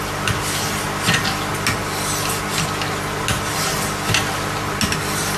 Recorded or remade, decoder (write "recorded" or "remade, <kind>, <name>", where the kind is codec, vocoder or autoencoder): recorded